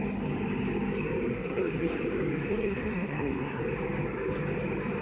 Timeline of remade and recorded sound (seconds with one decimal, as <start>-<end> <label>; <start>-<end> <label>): 0.0-1.3 recorded; 1.3-1.9 remade; 1.9-2.3 recorded; 2.3-3.6 remade; 3.6-5.0 recorded